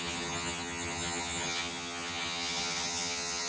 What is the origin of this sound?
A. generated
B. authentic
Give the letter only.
A